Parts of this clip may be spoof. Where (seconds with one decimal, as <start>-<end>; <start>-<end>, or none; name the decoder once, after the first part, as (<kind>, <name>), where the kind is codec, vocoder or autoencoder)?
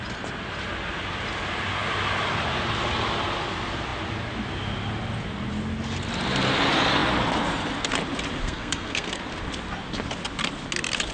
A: 8.4-9.2 (codec, SNAC)